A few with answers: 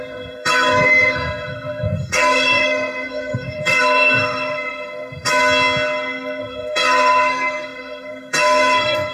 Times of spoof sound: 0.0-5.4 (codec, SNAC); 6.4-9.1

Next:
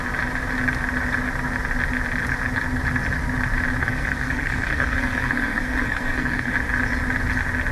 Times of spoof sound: 3.8-6.5 (codec, SNAC)

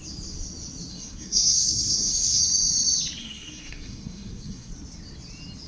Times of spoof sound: 0.9-2.4 (codec, SNAC); 3.2-4.7

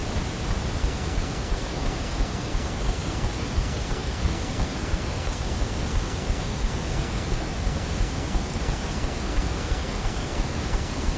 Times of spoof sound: 0.8-11.2 (codec, SNAC)

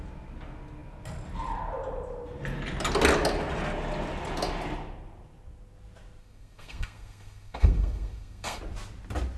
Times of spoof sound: 6.2-8.6 (codec, SNAC)

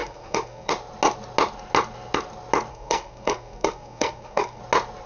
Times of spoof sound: 0.0-0.7 (codec, SNAC); 2.7-4.6

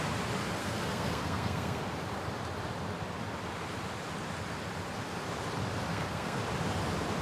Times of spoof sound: 0.6-1.8 (codec, SNAC); 5.9-6.4